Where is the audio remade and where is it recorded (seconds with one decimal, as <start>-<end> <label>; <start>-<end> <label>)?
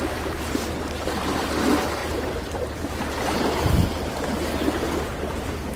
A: 0.0-2.0 recorded; 2.0-2.8 remade; 2.8-5.8 recorded